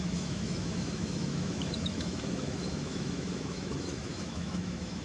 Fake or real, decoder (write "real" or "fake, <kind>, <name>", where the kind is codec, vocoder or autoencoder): fake, autoencoder, DAC-VAE